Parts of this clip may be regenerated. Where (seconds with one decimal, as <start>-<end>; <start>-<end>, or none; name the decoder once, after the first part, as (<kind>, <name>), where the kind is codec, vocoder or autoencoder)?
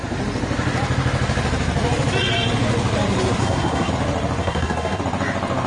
3.4-3.9 (codec, SNAC); 4.4-5.0